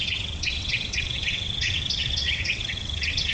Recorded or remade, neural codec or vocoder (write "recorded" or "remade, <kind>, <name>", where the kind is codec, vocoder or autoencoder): remade, vocoder, WaveNeXt